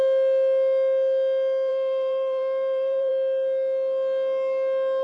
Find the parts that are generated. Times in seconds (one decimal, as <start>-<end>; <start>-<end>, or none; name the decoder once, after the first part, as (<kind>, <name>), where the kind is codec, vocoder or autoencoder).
1.7-3.1 (vocoder, BigVGAN v2)